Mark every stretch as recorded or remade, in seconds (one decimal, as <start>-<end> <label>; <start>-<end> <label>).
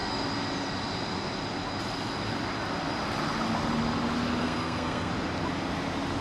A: 0.0-4.4 recorded; 4.4-5.1 remade; 5.1-6.2 recorded